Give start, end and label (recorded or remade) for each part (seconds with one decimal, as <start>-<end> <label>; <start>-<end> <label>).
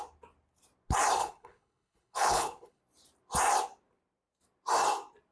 0.0-1.2 recorded; 1.2-2.8 remade; 2.8-5.3 recorded